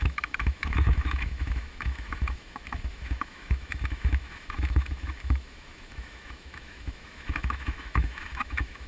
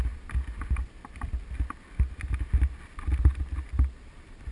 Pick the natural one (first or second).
second